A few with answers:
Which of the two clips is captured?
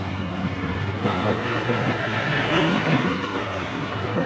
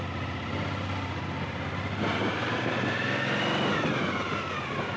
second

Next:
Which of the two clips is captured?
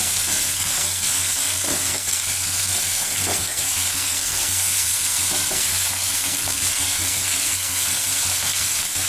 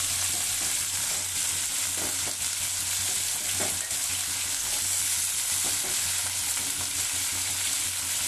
second